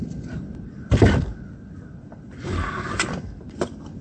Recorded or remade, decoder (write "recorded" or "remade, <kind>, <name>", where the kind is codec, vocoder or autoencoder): remade, vocoder, BigVGAN v2